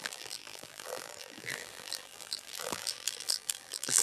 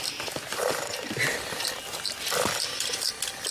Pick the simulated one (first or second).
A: first